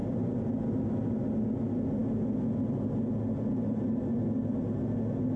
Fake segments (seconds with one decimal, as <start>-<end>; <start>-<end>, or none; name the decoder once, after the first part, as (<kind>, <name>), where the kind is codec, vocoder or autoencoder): none